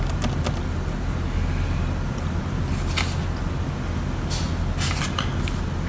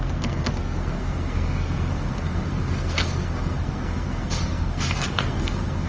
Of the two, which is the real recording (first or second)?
first